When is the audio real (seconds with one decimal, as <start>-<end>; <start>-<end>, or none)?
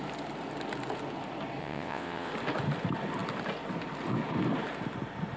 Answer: 0.0-1.6; 2.3-5.4